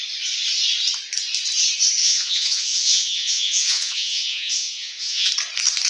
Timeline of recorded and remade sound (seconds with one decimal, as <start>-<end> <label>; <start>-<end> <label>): 0.0-2.0 recorded; 2.0-5.3 remade; 5.3-5.9 recorded